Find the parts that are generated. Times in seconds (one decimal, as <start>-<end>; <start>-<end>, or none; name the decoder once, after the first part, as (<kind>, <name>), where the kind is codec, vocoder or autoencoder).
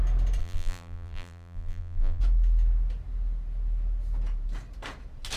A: 0.4-2.2 (vocoder, BigVGAN v2)